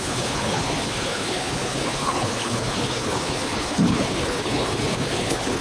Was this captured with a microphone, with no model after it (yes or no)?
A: no